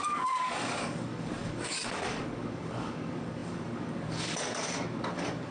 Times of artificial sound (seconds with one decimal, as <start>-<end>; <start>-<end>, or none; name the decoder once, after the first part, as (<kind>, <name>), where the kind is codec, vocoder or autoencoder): 0.0-5.5 (codec, DAC)